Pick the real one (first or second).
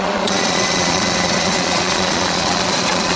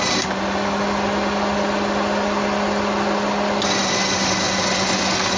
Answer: second